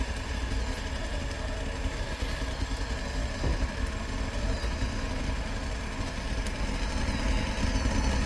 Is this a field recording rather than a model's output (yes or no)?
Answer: yes